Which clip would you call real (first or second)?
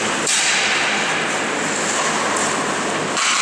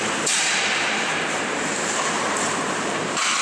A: first